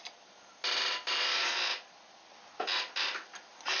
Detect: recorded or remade recorded